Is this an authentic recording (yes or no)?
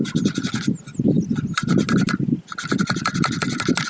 yes